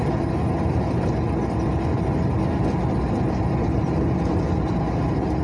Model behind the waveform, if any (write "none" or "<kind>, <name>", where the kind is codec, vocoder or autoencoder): none